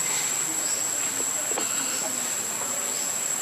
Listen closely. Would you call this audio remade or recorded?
recorded